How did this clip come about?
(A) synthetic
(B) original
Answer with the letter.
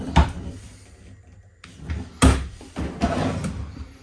B